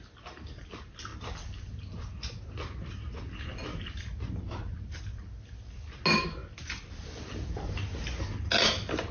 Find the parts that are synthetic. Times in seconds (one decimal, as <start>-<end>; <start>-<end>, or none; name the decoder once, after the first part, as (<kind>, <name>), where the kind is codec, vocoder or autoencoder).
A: none